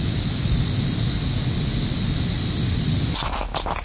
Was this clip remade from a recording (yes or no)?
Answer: no